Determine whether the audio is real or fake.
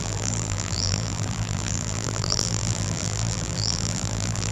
fake